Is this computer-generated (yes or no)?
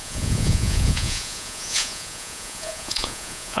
yes